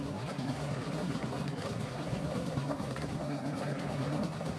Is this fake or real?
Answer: fake